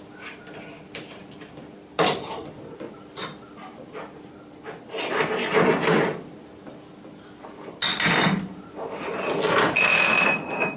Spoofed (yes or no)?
no